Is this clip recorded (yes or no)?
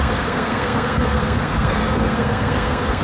no